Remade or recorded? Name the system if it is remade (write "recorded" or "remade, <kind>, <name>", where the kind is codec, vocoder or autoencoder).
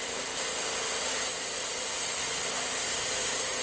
recorded